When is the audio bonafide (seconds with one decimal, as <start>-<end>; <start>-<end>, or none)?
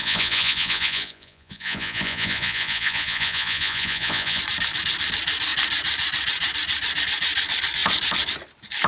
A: 4.4-8.9